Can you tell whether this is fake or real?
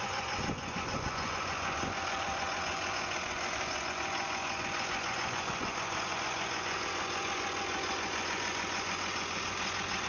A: fake